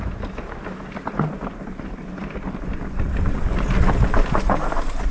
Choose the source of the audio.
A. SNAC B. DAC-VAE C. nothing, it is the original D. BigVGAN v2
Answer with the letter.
C